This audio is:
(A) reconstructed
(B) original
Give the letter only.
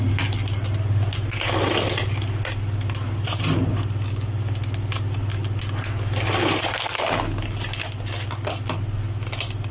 B